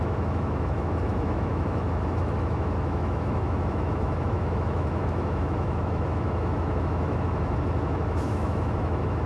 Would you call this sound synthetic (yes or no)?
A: yes